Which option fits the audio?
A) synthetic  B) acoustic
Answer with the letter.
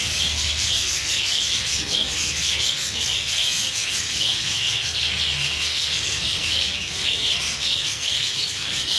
A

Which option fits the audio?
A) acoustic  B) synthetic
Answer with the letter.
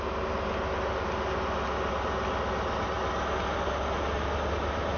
A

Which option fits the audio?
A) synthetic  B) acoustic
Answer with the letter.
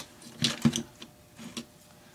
B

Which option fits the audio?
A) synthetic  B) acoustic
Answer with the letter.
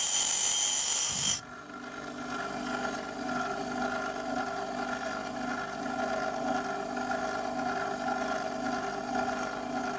B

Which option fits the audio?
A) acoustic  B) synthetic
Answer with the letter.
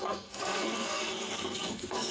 B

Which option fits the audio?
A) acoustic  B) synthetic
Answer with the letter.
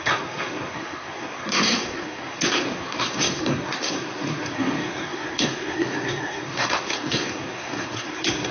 B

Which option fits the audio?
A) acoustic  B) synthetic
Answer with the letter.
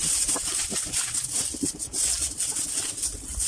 A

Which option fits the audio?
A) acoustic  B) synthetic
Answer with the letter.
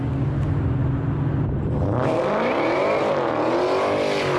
A